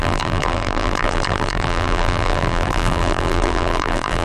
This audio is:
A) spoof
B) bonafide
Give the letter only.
A